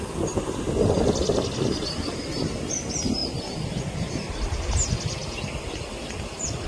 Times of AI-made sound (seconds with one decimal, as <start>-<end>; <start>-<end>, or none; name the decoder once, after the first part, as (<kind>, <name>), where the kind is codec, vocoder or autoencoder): none